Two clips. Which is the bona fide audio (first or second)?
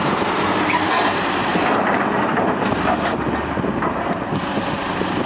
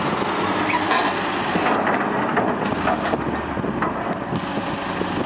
second